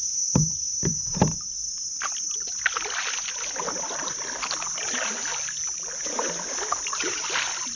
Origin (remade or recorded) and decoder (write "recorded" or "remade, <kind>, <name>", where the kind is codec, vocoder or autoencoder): recorded